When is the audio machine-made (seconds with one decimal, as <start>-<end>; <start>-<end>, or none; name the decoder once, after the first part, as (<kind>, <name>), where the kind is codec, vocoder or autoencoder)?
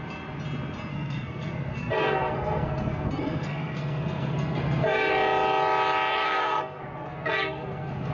0.9-5.1 (codec, SNAC); 6.1-8.1